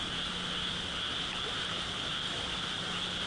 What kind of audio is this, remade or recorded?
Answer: recorded